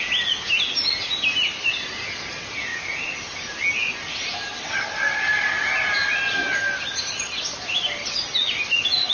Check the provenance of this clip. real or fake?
real